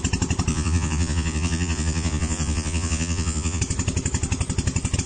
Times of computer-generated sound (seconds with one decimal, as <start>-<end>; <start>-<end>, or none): 0.5-3.6